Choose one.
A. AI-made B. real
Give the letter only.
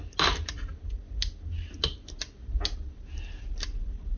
B